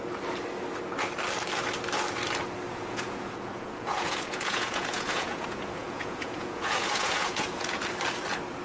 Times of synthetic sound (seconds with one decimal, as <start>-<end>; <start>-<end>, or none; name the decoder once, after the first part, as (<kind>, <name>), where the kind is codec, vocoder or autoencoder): 2.7-7.8 (vocoder, Vocos)